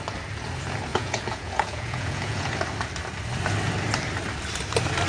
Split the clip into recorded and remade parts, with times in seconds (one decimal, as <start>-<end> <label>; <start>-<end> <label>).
0.0-0.9 recorded; 0.9-2.5 remade; 2.5-5.1 recorded

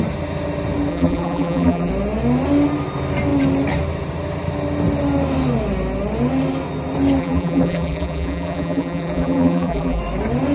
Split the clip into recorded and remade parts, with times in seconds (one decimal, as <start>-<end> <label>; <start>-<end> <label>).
0.0-0.9 recorded; 0.9-1.9 remade; 1.9-7.2 recorded; 7.2-10.0 remade; 10.0-10.5 recorded

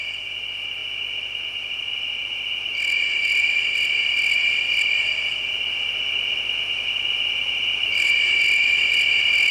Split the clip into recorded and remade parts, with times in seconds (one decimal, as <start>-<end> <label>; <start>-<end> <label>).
0.0-7.8 recorded; 7.8-8.4 remade; 8.4-9.5 recorded

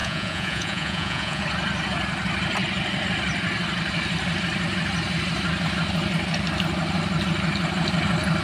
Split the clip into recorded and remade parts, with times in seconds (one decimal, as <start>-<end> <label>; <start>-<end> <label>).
0.0-1.4 remade; 1.4-8.4 recorded

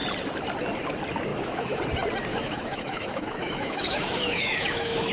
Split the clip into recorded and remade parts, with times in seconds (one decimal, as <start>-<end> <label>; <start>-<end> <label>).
0.0-1.3 recorded; 1.3-1.8 remade; 1.8-2.3 recorded; 2.3-5.1 remade

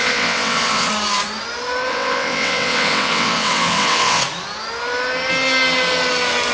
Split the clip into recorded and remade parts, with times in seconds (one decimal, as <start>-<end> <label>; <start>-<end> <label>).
0.0-0.9 remade; 0.9-1.9 recorded; 1.9-4.2 remade; 4.2-6.5 recorded